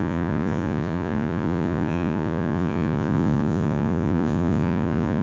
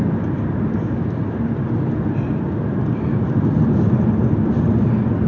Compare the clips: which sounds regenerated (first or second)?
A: first